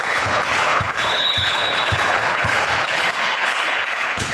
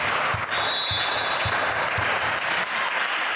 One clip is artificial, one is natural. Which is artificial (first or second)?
first